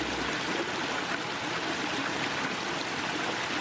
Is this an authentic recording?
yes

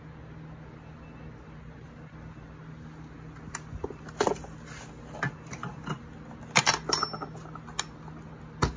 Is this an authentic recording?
yes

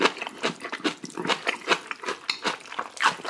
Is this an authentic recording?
yes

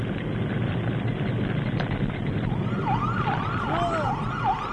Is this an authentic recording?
yes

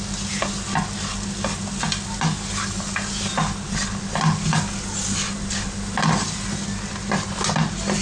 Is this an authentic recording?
yes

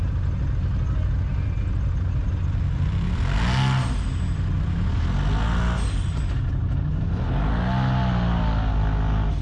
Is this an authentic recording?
yes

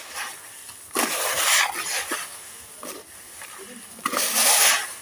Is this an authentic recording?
yes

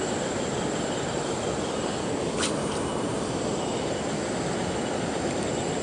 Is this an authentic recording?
yes